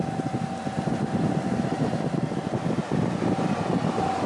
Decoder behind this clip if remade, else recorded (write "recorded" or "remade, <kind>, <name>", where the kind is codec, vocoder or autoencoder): recorded